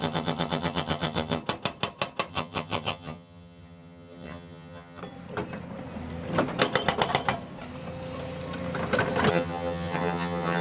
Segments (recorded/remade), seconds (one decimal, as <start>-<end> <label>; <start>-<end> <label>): 0.0-1.4 remade; 1.4-2.3 recorded; 2.3-5.0 remade; 5.0-9.3 recorded; 9.3-10.6 remade